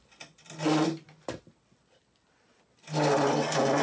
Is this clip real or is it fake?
real